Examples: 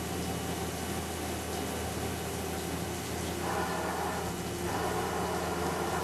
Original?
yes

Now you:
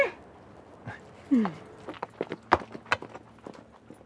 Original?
yes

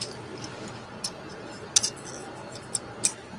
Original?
yes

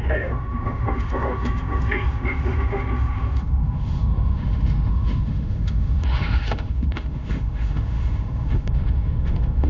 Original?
no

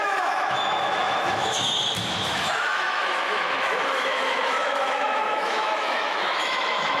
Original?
no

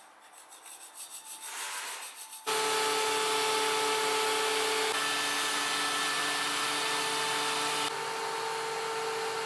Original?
yes